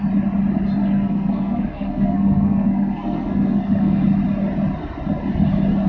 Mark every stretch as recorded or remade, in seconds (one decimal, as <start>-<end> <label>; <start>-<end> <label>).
0.0-0.8 recorded; 0.8-4.0 remade; 4.0-5.9 recorded